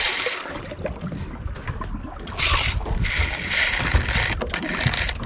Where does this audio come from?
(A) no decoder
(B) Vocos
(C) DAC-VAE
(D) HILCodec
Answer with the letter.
A